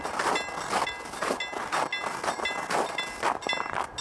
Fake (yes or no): no